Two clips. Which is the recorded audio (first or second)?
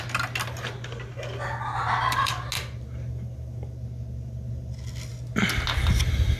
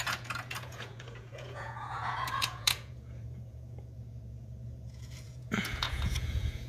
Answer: first